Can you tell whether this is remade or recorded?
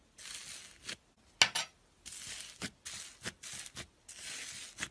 recorded